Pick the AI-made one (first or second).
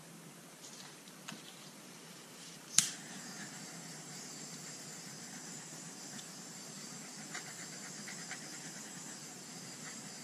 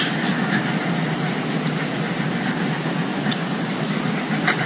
first